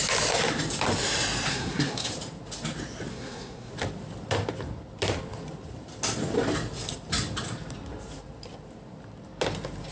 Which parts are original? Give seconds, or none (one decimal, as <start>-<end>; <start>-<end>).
0.0-1.5; 2.1-3.1; 3.7-9.9